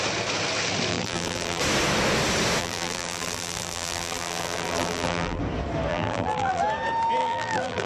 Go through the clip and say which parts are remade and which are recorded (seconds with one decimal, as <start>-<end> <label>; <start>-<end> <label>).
0.0-0.9 recorded; 0.9-1.6 remade; 1.6-2.6 recorded; 2.6-5.4 remade; 5.4-5.9 recorded; 5.9-6.6 remade; 6.6-7.2 recorded; 7.2-7.9 remade